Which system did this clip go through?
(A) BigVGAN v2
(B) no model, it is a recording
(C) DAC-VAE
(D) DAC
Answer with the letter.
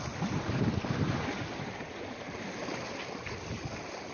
B